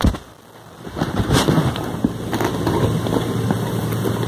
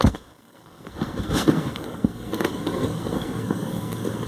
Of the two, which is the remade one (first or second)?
second